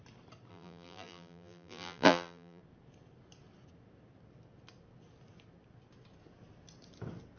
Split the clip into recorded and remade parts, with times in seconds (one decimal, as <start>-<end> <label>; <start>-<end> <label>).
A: 0.0-0.5 recorded; 0.5-2.6 remade; 2.6-7.4 recorded